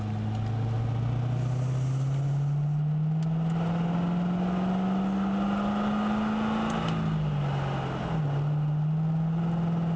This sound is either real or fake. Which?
real